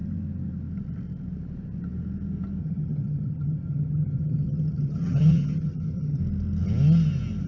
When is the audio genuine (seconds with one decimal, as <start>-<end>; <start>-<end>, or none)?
0.0-2.6; 6.2-7.5